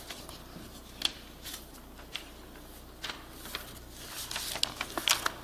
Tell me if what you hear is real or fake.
real